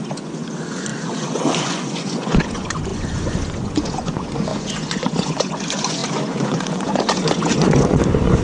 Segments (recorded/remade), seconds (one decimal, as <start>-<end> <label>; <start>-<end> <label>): 0.0-8.4 remade